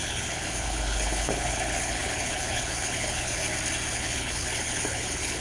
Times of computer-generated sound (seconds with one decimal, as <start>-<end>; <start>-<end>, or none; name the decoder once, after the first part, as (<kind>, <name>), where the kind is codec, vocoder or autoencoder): 0.0-3.4 (codec, HILCodec); 3.9-5.4